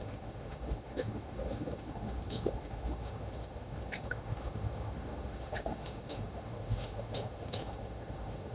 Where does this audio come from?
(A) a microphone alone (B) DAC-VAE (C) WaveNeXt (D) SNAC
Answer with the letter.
B